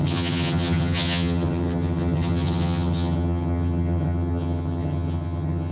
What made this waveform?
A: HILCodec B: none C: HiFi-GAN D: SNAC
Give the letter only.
C